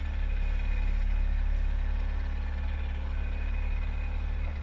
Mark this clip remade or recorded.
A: recorded